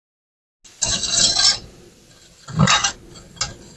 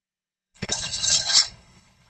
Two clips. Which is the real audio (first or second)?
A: first